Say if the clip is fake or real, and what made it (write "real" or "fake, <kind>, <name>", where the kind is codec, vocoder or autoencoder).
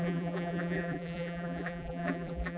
fake, vocoder, BigVGAN v2